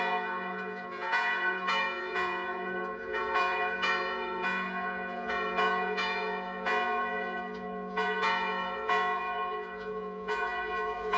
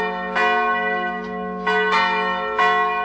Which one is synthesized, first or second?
first